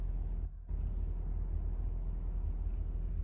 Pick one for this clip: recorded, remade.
recorded